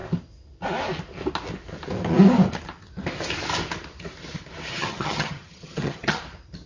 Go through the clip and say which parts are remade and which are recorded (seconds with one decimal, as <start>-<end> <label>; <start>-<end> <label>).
0.0-4.7 recorded; 4.7-6.2 remade; 6.2-6.7 recorded